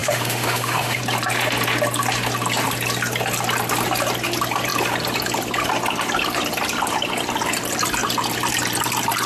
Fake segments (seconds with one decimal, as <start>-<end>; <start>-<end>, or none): 0.0-1.0